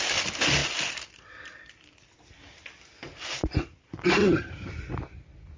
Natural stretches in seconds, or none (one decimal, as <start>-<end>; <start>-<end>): 0.0-4.2; 4.7-5.6